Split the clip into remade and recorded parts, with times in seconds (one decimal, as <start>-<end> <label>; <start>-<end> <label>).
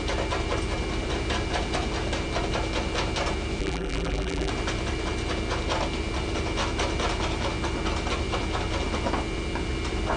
0.0-3.6 recorded; 3.6-4.5 remade; 4.5-10.2 recorded